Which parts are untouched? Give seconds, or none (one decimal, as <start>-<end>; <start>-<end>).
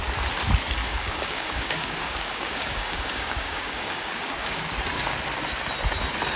0.0-0.8; 4.6-6.4